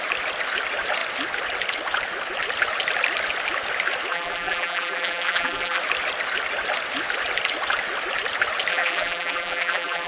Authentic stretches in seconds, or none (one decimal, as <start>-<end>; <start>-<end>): 0.0-4.1; 5.8-8.7